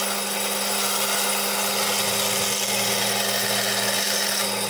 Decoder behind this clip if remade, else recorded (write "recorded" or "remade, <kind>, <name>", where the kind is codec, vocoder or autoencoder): recorded